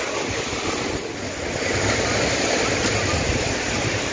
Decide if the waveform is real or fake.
real